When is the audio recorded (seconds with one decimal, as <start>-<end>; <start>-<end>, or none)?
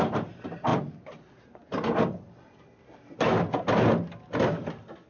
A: 0.0-5.1